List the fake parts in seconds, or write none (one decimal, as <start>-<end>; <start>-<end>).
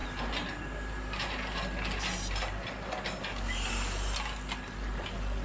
none